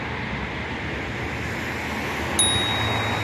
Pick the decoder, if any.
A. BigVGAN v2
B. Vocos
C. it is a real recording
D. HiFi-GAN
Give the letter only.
C